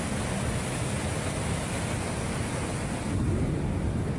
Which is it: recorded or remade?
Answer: recorded